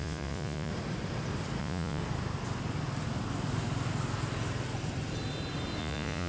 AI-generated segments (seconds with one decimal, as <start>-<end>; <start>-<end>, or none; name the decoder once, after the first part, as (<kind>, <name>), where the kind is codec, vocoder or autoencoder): 0.0-0.7 (vocoder, Vocos); 1.6-2.0; 5.8-6.3

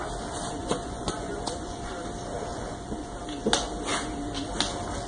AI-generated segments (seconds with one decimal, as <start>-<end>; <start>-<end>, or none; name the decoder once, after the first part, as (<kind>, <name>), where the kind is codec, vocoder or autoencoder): 0.6-1.9 (vocoder, Vocos); 2.5-3.1

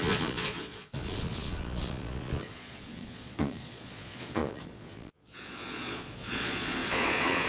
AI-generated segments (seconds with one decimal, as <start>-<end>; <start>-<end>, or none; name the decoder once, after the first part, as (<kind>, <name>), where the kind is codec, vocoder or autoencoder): 0.0-7.5 (vocoder, Vocos)

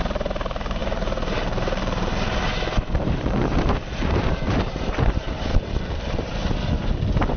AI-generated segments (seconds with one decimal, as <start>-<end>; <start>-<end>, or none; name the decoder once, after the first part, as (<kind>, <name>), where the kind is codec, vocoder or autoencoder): 0.0-6.4 (vocoder, BigVGAN v2)